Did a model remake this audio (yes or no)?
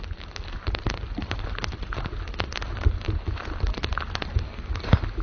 no